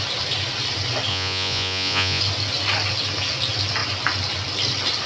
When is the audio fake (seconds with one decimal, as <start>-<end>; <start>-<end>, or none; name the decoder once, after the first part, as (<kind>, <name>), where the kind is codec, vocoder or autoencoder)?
1.1-2.2 (vocoder, Vocos)